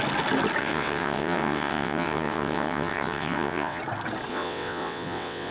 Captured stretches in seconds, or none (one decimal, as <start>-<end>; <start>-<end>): 0.0-0.6; 3.8-4.3